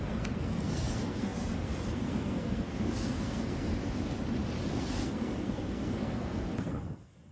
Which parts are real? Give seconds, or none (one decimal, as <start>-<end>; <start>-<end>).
3.7-4.7